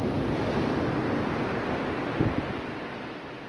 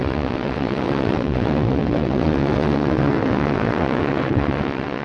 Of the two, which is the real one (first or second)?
first